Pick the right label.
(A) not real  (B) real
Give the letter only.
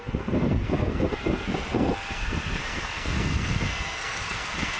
A